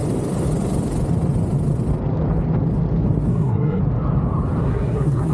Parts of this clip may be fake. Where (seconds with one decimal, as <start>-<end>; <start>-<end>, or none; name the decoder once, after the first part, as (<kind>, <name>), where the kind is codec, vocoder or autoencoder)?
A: 3.3-3.8 (codec, SNAC); 4.6-5.3